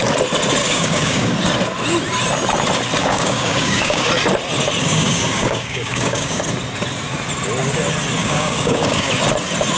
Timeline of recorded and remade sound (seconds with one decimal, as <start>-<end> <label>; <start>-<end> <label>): 0.0-0.6 recorded; 0.6-1.3 remade; 1.3-3.0 recorded; 3.0-4.1 remade; 4.1-4.8 recorded; 4.8-6.4 remade; 6.4-8.2 recorded; 8.2-9.1 remade; 9.1-9.8 recorded